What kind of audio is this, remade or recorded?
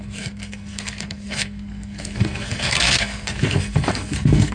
remade